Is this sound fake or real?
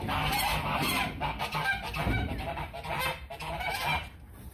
real